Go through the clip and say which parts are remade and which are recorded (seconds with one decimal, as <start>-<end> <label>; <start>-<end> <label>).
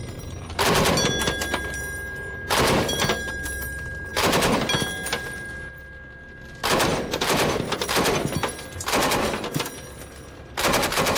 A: 0.0-11.2 recorded